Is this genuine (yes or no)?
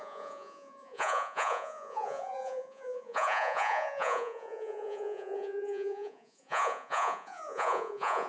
no